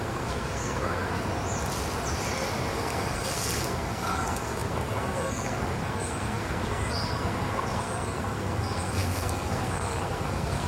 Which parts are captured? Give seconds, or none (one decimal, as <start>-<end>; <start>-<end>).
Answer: 1.3-2.7